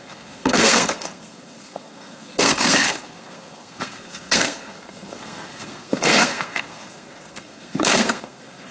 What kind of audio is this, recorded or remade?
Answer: remade